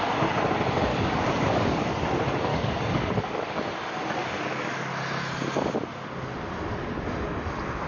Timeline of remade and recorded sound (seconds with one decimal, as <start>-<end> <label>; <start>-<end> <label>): 0.0-0.9 recorded; 0.9-1.9 remade; 1.9-2.5 recorded; 2.5-3.6 remade; 3.6-4.2 recorded; 4.2-4.9 remade; 4.9-7.9 recorded